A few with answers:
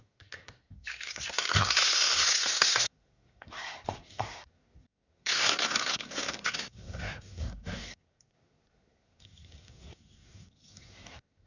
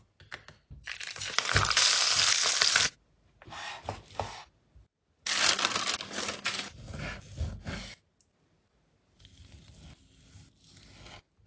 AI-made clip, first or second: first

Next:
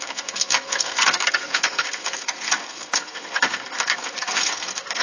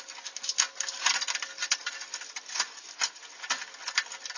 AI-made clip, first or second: first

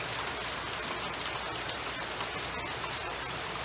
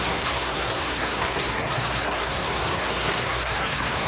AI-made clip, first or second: second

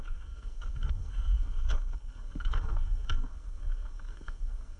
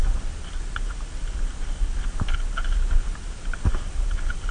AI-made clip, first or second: first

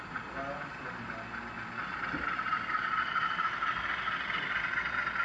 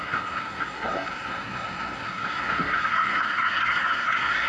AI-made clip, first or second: second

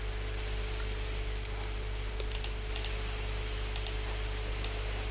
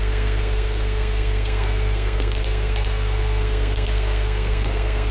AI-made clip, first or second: second